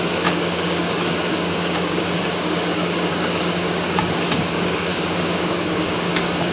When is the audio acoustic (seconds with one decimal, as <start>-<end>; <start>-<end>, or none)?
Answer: none